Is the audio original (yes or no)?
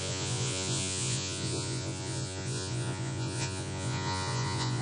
no